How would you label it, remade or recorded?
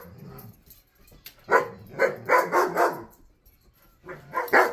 recorded